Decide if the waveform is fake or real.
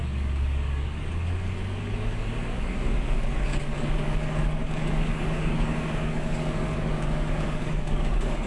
fake